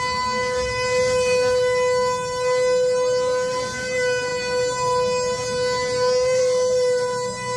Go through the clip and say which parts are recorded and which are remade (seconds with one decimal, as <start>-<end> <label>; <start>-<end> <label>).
0.0-7.6 recorded